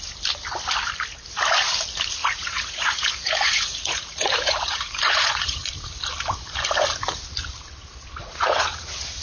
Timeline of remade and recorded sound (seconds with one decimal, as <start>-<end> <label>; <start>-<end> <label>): 0.0-2.2 recorded; 2.2-5.7 remade; 5.7-8.2 recorded; 8.2-9.2 remade